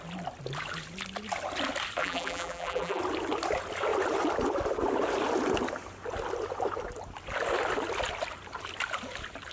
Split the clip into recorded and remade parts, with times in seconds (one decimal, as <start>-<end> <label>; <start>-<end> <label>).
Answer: 0.0-2.0 recorded; 2.0-3.0 remade; 3.0-9.5 recorded